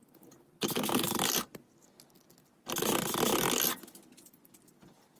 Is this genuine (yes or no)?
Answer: yes